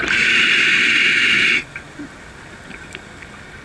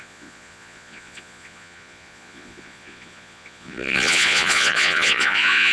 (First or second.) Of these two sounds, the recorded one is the first